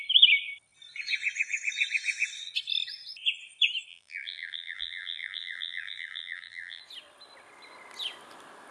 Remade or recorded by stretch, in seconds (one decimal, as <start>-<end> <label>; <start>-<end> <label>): 0.0-3.9 recorded; 3.9-6.8 remade; 6.8-8.7 recorded